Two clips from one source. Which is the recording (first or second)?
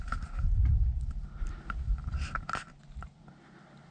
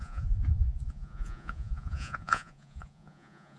first